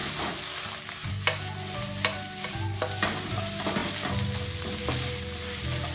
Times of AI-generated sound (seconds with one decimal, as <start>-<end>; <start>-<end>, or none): none